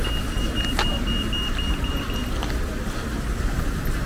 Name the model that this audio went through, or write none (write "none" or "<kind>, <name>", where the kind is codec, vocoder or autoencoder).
none